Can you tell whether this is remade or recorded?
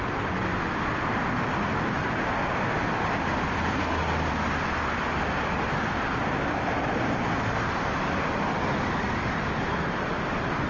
recorded